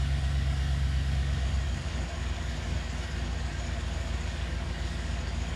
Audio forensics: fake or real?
fake